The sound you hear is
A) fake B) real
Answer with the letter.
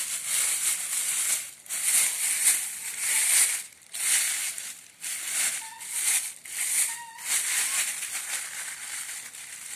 B